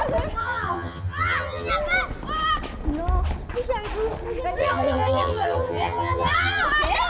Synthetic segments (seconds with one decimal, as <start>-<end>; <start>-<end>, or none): 0.4-1.7; 4.6-6.6